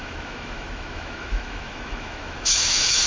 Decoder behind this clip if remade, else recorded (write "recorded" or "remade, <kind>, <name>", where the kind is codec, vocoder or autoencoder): remade, autoencoder, DAC-VAE